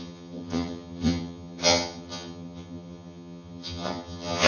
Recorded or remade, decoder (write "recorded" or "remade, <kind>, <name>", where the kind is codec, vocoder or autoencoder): remade, vocoder, HiFi-GAN